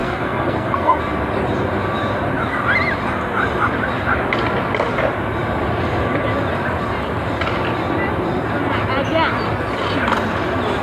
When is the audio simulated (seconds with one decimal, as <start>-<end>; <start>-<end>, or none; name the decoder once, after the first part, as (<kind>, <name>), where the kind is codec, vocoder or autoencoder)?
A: 0.0-1.0 (codec, SNAC)